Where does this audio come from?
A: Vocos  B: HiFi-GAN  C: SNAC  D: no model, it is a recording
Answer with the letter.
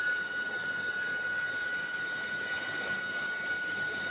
B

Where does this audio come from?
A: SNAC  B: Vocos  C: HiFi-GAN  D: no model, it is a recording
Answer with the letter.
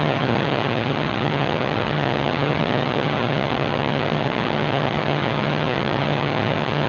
C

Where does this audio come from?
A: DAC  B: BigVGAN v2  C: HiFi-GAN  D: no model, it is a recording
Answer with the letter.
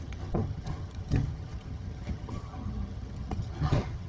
C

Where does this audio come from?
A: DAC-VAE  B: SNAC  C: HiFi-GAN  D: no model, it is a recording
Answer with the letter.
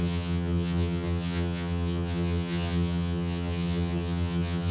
C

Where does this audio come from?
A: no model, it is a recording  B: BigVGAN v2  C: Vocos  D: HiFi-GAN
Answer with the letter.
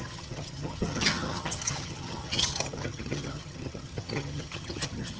D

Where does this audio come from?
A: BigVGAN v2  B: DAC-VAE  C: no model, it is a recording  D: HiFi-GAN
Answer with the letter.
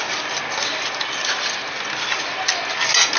C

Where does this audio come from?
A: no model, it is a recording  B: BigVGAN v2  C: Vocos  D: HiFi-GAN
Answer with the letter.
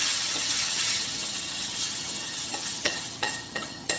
D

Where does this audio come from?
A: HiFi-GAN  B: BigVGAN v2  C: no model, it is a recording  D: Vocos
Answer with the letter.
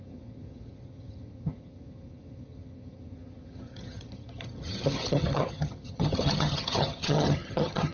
A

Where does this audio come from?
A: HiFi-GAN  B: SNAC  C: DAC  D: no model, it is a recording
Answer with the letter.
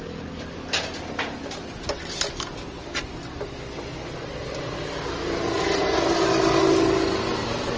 D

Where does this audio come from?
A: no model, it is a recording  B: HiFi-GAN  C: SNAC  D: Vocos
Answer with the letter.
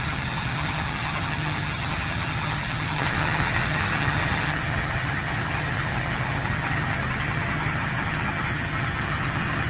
B